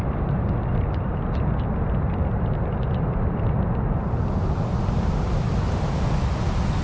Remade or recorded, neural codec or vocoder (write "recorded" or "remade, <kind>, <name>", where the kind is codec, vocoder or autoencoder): recorded